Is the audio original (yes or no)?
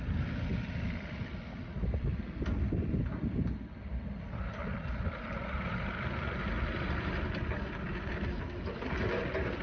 yes